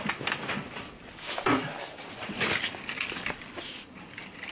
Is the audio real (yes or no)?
no